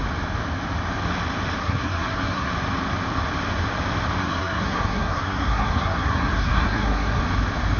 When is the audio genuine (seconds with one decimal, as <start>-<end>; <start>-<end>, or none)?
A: 0.0-1.6; 2.5-4.2; 7.2-7.8